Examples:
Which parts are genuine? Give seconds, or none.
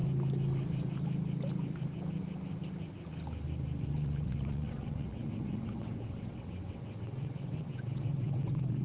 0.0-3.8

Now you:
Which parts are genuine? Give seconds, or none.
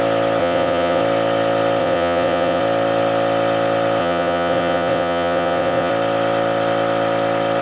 0.0-0.4; 1.0-1.8; 2.6-4.0; 5.9-7.6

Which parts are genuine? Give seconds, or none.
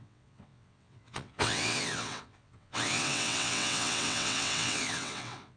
none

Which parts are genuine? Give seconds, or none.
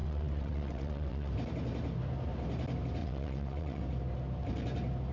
1.3-3.0; 3.8-5.1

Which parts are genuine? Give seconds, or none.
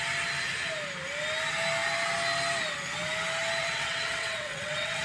0.0-3.6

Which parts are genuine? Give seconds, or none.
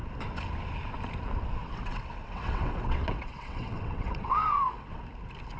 0.0-1.6; 5.0-5.6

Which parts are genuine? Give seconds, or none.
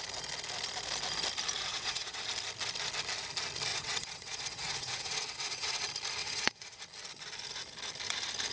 0.0-1.7; 2.2-3.7; 5.8-6.2; 6.8-8.5